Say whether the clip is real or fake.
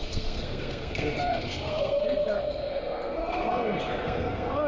fake